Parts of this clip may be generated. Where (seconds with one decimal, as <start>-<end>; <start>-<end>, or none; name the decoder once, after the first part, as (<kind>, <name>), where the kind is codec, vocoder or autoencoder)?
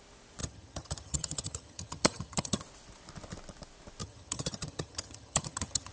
0.4-2.6 (vocoder, HiFi-GAN); 4.0-5.9